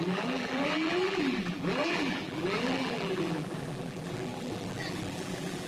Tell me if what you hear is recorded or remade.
remade